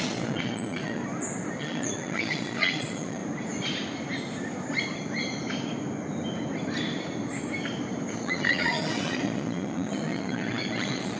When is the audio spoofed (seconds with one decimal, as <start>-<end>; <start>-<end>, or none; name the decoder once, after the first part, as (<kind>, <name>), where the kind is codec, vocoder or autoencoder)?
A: 0.0-1.0 (vocoder, Vocos); 1.6-3.2; 8.1-11.2